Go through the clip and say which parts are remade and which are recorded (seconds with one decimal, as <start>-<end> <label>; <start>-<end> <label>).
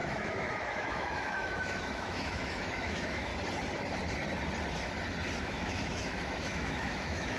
0.0-3.3 remade; 3.3-5.4 recorded; 5.4-7.4 remade